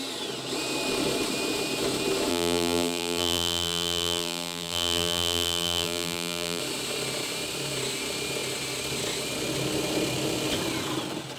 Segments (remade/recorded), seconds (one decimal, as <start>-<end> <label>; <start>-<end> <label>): 0.0-2.3 recorded; 2.3-6.6 remade; 6.6-11.4 recorded